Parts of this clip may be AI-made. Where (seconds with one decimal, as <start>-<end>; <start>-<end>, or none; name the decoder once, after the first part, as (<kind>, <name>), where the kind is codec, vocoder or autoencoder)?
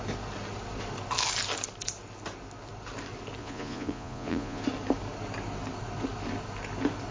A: 3.4-4.6 (vocoder, Vocos)